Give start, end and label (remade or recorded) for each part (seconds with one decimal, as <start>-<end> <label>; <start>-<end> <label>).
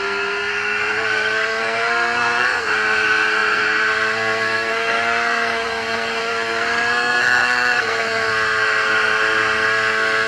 0.0-10.3 remade